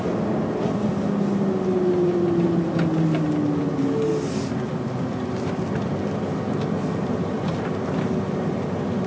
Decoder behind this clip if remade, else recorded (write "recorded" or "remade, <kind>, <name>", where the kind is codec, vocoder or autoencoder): recorded